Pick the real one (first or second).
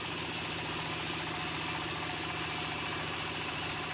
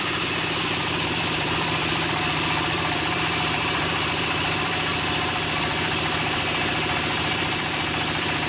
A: first